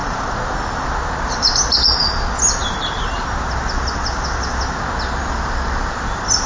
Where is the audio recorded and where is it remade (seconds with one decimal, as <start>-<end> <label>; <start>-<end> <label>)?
0.0-6.5 recorded